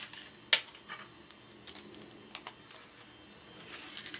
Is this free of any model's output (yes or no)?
yes